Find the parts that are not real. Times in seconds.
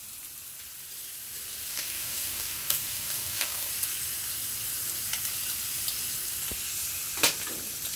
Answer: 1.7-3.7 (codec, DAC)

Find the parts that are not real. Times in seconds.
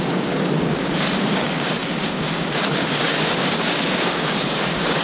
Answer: 0.0-5.0 (codec, DAC)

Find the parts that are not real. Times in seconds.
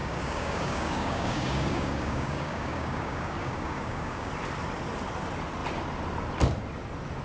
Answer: 0.0-4.3 (codec, DAC)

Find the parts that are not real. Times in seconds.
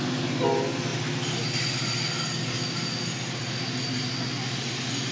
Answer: none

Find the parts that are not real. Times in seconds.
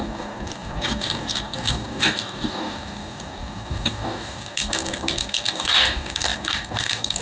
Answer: 0.0-7.2 (codec, DAC)